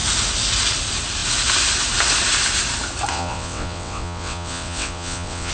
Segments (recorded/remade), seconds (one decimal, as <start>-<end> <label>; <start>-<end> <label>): 0.0-3.1 recorded; 3.1-5.5 remade